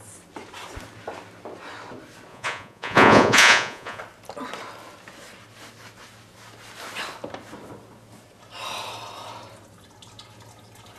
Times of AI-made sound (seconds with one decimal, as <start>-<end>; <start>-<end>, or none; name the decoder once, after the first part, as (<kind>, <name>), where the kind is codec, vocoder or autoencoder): 2.3-4.0 (vocoder, Vocos)